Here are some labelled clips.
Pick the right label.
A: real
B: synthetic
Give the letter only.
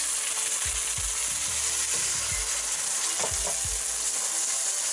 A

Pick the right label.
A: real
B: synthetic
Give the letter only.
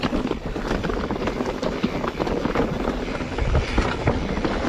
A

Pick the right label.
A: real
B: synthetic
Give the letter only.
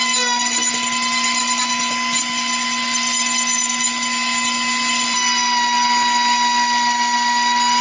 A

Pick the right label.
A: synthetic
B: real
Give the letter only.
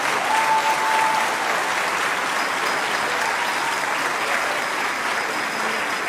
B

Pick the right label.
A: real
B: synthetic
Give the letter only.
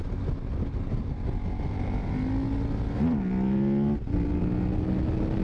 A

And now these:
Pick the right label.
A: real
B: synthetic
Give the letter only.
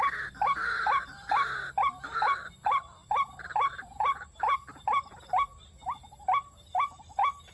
A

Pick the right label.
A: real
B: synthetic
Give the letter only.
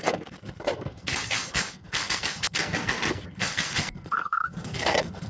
B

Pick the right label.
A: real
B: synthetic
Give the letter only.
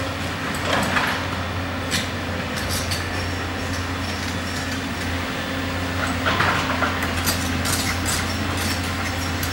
A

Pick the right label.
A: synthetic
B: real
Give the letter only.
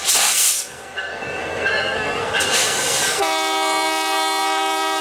A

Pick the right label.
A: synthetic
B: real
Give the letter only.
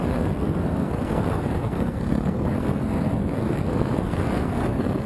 A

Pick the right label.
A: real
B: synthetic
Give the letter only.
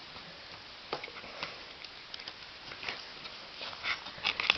A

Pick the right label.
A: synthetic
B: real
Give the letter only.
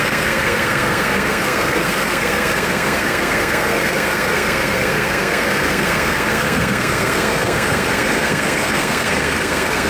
A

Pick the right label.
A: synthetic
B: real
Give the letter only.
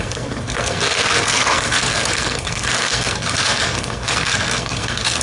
A